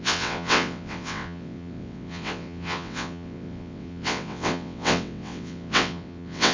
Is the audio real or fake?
fake